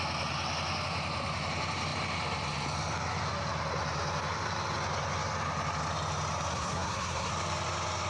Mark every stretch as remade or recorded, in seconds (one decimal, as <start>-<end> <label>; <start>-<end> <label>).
0.0-6.5 recorded; 6.5-7.3 remade; 7.3-8.1 recorded